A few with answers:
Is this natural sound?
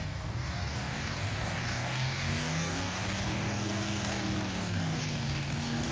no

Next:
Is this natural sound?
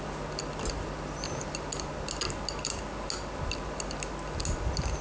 yes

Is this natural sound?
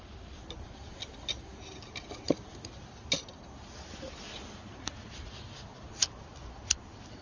yes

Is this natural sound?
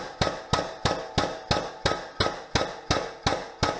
yes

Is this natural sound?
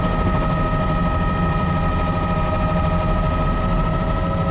yes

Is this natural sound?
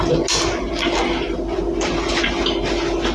yes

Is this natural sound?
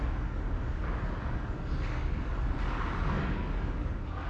no